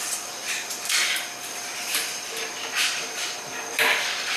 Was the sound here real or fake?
real